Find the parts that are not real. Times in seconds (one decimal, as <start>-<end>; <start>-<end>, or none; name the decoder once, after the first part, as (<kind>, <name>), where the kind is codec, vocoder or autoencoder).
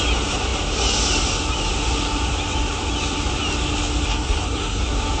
4.1-4.8 (codec, SNAC)